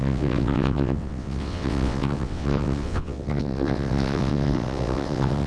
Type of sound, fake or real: fake